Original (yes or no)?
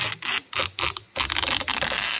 yes